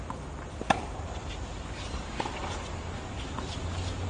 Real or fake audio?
real